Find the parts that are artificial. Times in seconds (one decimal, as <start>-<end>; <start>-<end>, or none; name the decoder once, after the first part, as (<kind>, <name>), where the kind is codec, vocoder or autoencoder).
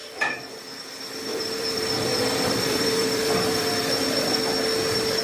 0.0-0.8 (vocoder, BigVGAN v2); 1.3-4.4